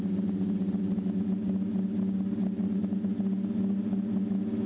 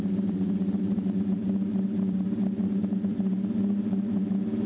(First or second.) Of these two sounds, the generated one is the second